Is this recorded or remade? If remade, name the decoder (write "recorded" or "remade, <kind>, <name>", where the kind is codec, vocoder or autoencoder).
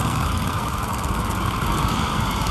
remade, codec, SNAC